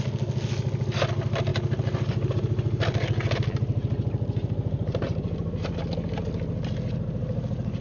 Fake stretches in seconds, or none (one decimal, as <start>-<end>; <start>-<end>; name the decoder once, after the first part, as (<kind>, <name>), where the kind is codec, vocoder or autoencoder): none